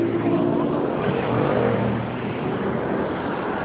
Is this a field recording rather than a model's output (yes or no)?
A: yes